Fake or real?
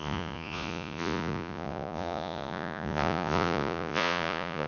fake